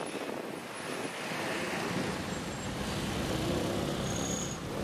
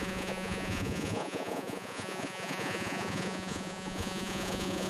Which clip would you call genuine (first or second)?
first